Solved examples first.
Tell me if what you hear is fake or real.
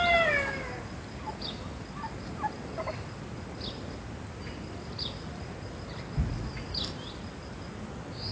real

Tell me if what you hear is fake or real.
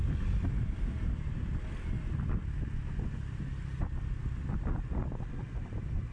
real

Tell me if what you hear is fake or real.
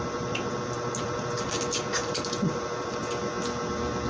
real